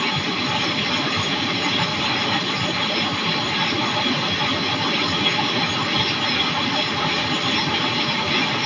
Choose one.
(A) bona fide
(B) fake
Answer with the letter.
A